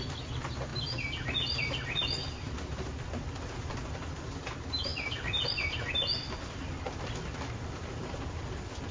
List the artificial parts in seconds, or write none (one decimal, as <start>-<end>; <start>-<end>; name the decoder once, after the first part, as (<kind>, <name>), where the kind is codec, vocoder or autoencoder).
0.7-4.2 (vocoder, BigVGAN v2); 4.9-8.9